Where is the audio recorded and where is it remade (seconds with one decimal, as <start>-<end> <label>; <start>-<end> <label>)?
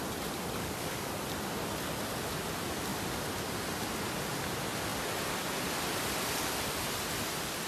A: 0.0-0.6 recorded; 0.6-1.1 remade; 1.1-7.7 recorded